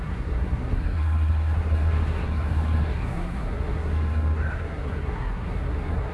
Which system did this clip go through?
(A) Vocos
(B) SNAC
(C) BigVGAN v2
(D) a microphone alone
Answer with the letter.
B